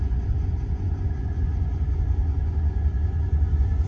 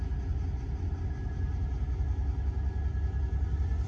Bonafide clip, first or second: second